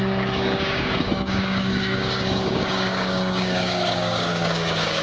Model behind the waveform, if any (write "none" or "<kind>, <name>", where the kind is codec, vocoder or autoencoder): codec, DAC